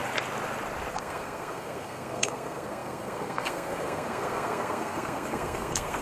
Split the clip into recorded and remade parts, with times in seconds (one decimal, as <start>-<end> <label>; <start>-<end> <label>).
0.0-0.9 recorded; 0.9-6.0 remade